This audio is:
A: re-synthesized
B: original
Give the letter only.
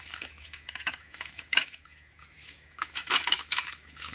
A